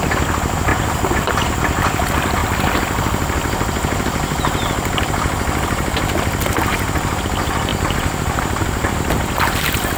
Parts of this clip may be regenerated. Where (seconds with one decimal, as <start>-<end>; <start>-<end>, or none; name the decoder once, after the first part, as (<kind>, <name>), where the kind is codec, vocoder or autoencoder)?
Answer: 0.7-1.6 (vocoder, BigVGAN v2); 7.7-9.6